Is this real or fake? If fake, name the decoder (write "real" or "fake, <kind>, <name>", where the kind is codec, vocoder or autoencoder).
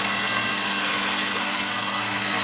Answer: fake, codec, SNAC